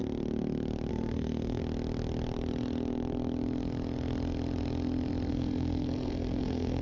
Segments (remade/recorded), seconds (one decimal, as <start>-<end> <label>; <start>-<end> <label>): 0.0-0.9 recorded; 0.9-1.6 remade; 1.6-5.3 recorded; 5.3-6.8 remade